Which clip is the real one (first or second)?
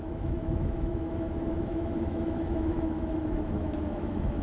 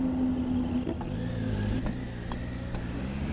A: second